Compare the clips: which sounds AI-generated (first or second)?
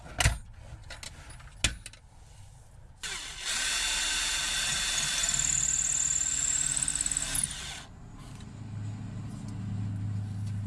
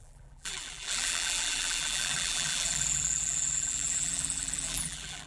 second